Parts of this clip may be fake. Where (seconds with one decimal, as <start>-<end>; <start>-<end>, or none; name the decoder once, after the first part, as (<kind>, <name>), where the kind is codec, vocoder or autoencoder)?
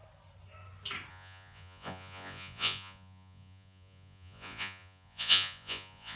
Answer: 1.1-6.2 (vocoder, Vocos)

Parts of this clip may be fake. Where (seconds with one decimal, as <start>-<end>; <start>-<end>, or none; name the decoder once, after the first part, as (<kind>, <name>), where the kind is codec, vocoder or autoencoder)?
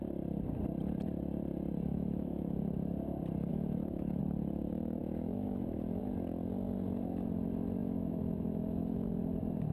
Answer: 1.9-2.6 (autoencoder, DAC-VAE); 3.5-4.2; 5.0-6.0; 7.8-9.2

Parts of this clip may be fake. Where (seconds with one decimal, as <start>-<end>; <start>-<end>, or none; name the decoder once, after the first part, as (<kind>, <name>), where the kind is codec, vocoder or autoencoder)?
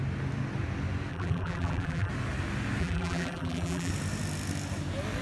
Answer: 1.1-2.1 (vocoder, BigVGAN v2); 2.8-3.9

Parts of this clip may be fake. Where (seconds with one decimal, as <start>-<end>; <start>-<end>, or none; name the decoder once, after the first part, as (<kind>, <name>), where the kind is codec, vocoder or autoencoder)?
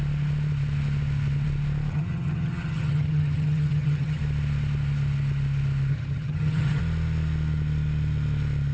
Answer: 1.9-4.2 (vocoder, HiFi-GAN); 5.9-6.8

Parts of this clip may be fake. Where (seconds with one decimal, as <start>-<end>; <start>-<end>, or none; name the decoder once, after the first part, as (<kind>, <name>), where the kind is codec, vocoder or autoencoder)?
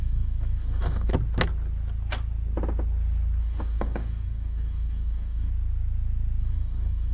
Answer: 0.0-1.1 (codec, DAC); 3.4-5.5; 6.4-7.1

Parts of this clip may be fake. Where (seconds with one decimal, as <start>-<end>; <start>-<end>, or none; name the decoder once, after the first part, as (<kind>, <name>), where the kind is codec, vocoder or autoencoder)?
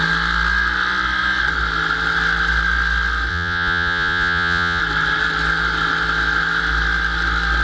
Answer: 3.3-4.8 (vocoder, Vocos)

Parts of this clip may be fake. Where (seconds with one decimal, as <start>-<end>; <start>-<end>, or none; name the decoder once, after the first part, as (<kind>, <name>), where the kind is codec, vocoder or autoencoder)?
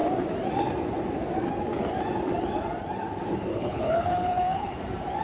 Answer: 3.5-4.8 (codec, HILCodec)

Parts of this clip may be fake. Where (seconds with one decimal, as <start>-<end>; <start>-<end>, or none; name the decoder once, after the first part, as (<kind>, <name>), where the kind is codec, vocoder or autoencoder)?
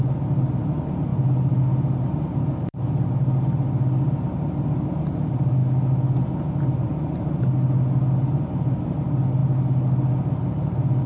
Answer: none